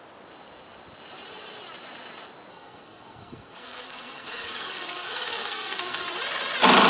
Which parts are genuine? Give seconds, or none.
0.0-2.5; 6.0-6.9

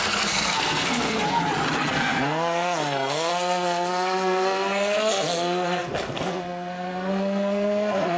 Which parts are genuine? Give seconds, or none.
1.4-1.9

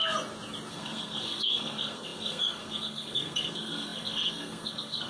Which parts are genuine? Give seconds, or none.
0.0-0.7

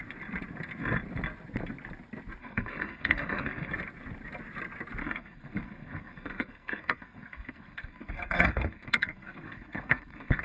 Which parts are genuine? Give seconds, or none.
0.0-2.4; 3.7-5.0